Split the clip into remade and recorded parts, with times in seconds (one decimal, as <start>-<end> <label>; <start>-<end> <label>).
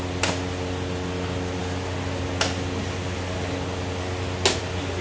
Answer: 0.0-5.0 recorded